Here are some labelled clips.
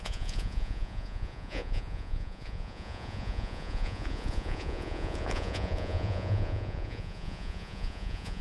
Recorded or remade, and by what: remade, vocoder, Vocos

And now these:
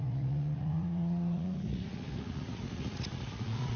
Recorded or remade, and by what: remade, vocoder, Vocos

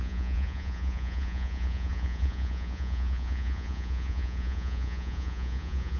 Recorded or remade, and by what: remade, vocoder, Vocos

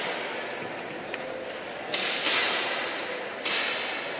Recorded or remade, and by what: recorded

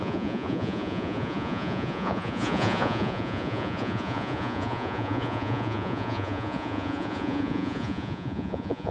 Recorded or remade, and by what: remade, vocoder, Vocos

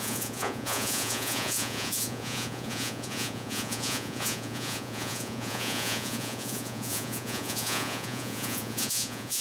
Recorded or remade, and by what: remade, vocoder, Vocos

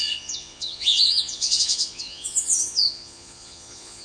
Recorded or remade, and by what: remade, vocoder, Vocos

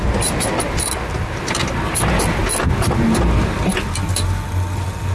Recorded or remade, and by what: recorded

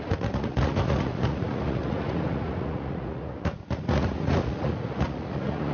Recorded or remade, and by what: remade, vocoder, Vocos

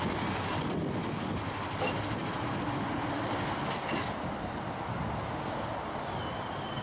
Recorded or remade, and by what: recorded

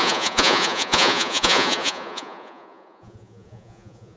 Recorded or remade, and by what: remade, vocoder, Vocos